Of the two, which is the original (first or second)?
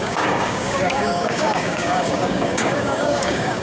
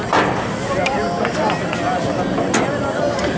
second